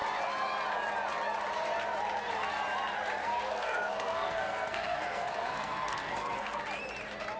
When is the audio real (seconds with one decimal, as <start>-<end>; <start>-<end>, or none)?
0.0-3.2; 6.6-7.4